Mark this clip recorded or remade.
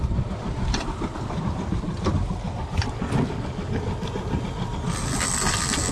recorded